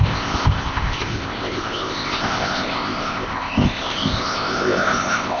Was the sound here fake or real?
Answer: fake